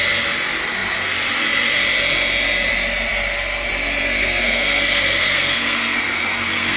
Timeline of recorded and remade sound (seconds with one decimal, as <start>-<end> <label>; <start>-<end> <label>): 0.0-4.2 recorded; 4.2-6.8 remade